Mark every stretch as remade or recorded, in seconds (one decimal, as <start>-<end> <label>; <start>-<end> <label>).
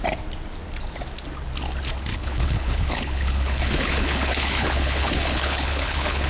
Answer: 0.0-2.1 recorded; 2.1-6.3 remade